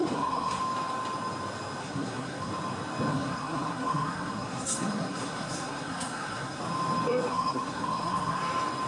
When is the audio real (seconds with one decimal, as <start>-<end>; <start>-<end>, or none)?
0.6-1.8; 2.5-3.1; 6.6-7.3; 8.4-8.9